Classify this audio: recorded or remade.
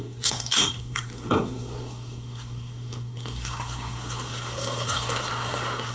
remade